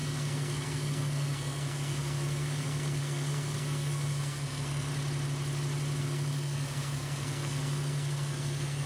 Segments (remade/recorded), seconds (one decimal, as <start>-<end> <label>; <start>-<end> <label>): 0.0-4.9 remade; 4.9-6.0 recorded; 6.0-8.9 remade